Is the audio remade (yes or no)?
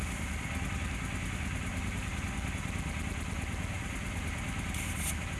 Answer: no